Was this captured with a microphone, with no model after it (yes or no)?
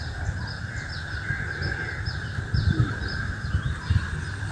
yes